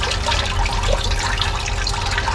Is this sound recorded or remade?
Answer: recorded